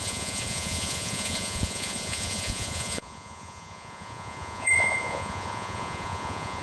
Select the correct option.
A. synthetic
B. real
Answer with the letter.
A